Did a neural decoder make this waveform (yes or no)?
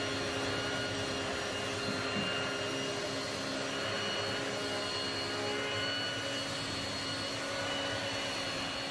no